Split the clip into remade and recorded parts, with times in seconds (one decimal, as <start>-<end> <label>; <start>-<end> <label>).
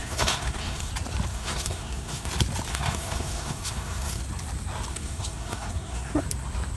0.0-0.9 remade; 0.9-1.3 recorded; 1.3-2.3 remade; 2.3-2.7 recorded; 2.7-4.2 remade; 4.2-4.9 recorded; 4.9-6.2 remade; 6.2-6.8 recorded